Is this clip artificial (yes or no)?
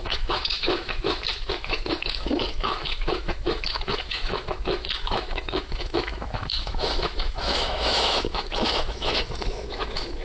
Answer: yes